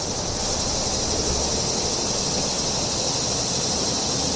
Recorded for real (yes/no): yes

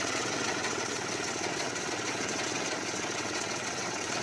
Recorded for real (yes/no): no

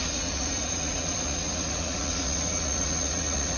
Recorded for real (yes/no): no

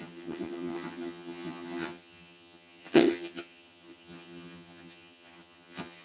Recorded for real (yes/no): no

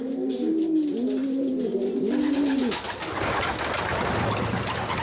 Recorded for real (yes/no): yes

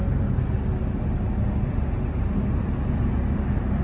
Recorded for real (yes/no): yes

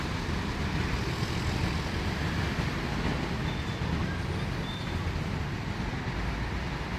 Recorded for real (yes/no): yes